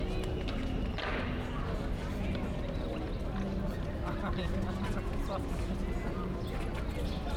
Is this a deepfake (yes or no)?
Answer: no